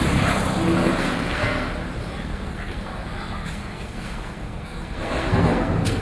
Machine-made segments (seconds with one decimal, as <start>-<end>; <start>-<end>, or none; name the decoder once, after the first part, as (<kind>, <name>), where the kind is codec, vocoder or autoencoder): 0.8-1.7 (codec, SNAC); 2.1-6.0